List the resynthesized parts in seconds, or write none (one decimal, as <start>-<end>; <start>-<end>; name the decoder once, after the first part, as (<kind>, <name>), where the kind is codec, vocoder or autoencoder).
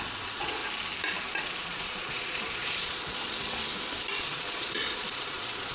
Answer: 0.0-0.6 (vocoder, Vocos); 1.4-3.6; 4.2-5.7